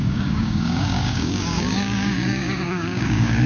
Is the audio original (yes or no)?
no